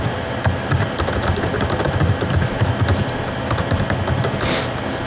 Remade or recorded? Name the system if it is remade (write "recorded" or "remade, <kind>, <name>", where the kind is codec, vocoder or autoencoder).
recorded